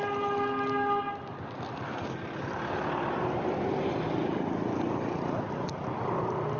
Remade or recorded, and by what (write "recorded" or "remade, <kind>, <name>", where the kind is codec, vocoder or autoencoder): recorded